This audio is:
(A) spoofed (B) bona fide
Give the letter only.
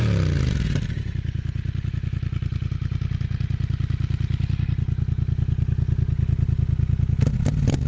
B